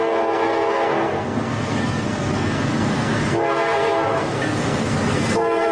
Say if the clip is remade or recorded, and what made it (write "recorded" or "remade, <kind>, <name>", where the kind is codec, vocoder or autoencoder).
remade, codec, SNAC